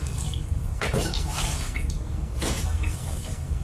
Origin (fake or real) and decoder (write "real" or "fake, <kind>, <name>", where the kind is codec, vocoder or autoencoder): fake, codec, SNAC